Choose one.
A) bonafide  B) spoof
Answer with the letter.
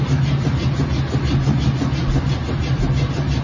A